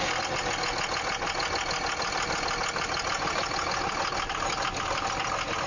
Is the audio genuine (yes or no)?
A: yes